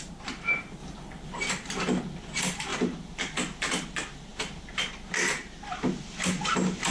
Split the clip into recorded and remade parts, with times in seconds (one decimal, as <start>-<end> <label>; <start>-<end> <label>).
0.0-6.9 recorded